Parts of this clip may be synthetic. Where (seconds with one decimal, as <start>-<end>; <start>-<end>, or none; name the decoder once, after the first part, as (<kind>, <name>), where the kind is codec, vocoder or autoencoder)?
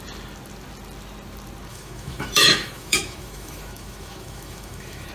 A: 1.7-5.1 (autoencoder, DAC-VAE)